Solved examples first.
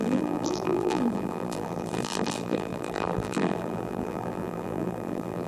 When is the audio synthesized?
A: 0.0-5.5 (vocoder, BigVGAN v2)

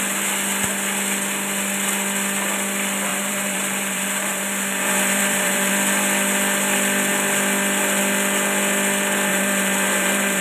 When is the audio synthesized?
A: 3.1-5.7 (vocoder, BigVGAN v2); 9.3-10.4

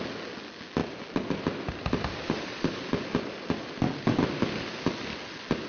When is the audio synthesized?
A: 0.8-4.2 (vocoder, BigVGAN v2)

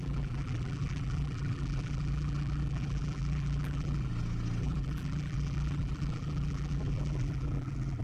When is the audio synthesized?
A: 0.0-4.1 (vocoder, BigVGAN v2); 4.6-8.0

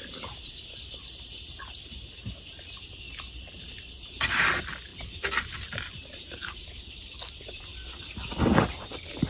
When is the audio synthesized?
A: 4.9-6.8 (vocoder, BigVGAN v2)

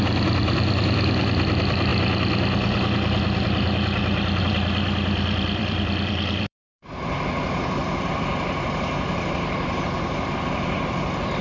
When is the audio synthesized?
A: 0.0-1.9 (vocoder, BigVGAN v2); 4.4-11.4